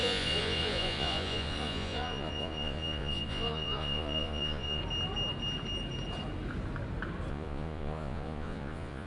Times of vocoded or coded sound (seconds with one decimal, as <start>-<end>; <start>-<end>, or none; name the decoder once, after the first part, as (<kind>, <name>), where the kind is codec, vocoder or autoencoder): 0.0-4.8 (vocoder, Vocos); 7.3-9.1